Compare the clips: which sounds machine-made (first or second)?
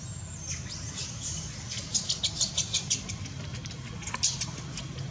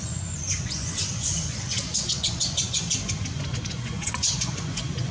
second